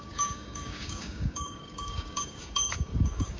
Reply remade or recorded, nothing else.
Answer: remade